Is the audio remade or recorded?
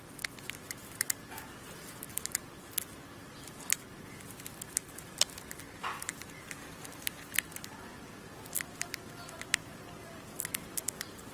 recorded